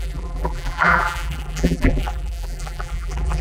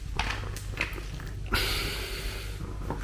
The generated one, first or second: first